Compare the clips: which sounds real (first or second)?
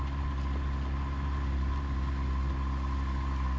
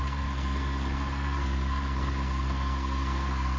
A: first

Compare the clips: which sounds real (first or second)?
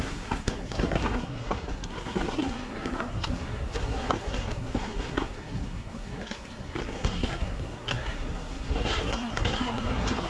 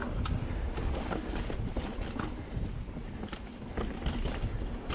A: second